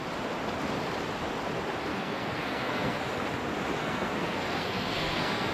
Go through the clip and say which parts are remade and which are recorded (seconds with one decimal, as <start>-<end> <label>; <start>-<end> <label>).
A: 0.0-1.9 recorded; 1.9-3.0 remade; 3.0-3.8 recorded; 3.8-5.5 remade